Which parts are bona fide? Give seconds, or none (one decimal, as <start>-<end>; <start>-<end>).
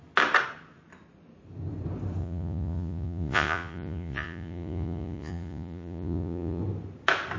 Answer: 0.0-2.2; 6.6-7.4